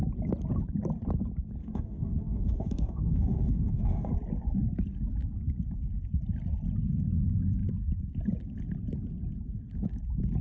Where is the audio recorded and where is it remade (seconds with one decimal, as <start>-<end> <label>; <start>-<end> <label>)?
0.0-1.6 recorded; 1.6-4.1 remade; 4.1-10.4 recorded